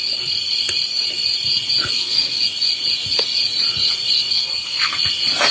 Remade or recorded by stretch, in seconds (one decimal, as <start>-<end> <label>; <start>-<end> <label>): 0.0-1.9 recorded; 1.9-2.4 remade; 2.4-4.3 recorded; 4.3-4.9 remade; 4.9-5.5 recorded